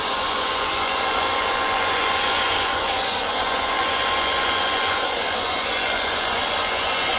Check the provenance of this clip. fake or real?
fake